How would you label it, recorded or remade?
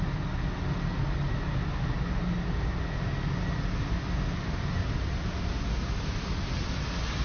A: recorded